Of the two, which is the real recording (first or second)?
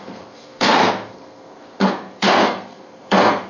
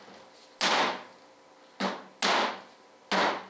second